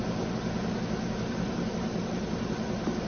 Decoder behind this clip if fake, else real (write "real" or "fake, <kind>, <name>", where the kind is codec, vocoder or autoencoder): real